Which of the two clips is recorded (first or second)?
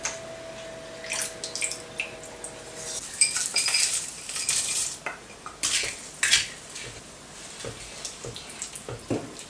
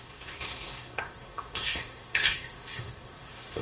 first